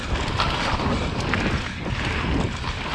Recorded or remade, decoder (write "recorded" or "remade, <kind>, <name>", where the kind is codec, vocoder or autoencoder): recorded